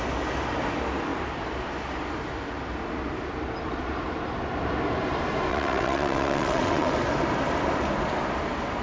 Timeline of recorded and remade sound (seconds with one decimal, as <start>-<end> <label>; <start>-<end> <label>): 0.0-5.5 recorded; 5.5-6.9 remade; 6.9-8.8 recorded